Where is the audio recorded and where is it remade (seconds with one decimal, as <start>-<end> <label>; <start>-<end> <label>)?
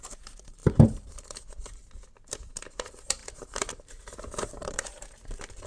0.0-1.8 remade; 1.8-2.5 recorded; 2.5-5.7 remade